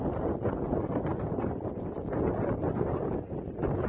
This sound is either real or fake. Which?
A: real